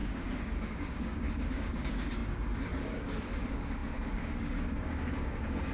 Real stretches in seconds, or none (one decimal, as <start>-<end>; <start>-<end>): none